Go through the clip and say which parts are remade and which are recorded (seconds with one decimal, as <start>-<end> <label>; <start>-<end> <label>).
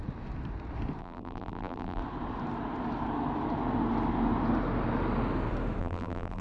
0.0-1.0 recorded; 1.0-2.0 remade; 2.0-5.8 recorded; 5.8-6.4 remade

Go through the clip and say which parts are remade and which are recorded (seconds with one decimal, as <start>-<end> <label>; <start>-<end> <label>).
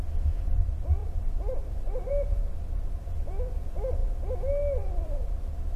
0.0-5.8 recorded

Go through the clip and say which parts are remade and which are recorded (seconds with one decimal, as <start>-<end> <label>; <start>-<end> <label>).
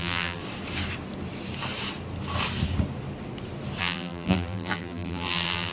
0.0-0.4 remade; 0.4-3.8 recorded; 3.8-5.7 remade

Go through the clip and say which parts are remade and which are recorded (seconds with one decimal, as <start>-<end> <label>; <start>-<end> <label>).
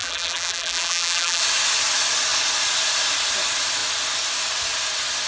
0.0-1.4 remade; 1.4-5.3 recorded